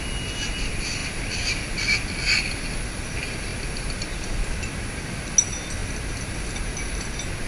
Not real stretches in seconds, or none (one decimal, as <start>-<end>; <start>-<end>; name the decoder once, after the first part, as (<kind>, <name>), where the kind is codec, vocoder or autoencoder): 1.0-3.0 (vocoder, BigVGAN v2); 3.5-4.4